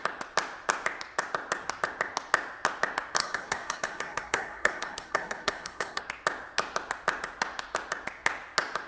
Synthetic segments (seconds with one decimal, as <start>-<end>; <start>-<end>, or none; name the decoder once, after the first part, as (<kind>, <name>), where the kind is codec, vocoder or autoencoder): 3.2-6.0 (codec, SNAC)